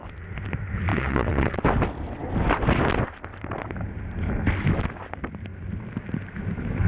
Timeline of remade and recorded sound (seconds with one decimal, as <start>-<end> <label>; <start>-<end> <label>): 0.0-0.9 recorded; 0.9-1.6 remade; 1.6-6.9 recorded